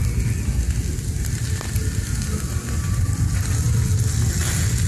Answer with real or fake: real